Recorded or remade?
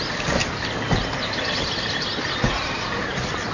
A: recorded